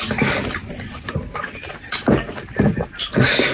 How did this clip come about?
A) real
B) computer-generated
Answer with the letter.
A